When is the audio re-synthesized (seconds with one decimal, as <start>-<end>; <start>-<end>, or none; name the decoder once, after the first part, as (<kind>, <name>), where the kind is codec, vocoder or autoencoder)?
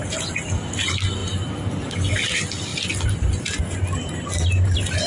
none